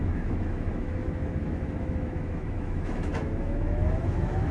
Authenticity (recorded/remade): remade